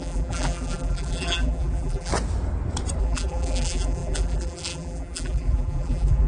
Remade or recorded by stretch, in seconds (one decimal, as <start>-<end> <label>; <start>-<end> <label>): 0.0-2.1 remade; 2.1-3.0 recorded; 3.0-6.3 remade